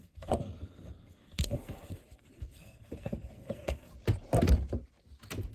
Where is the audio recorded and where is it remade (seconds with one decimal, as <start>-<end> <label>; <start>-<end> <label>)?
0.0-3.9 remade; 3.9-5.5 recorded